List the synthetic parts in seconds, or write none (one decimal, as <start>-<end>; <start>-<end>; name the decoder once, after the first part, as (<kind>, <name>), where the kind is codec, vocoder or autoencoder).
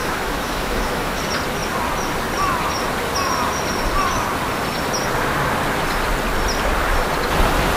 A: 0.0-1.2 (autoencoder, DAC-VAE)